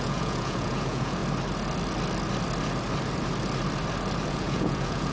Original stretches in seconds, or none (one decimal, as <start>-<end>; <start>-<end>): 1.2-4.3